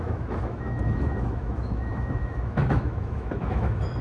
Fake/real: fake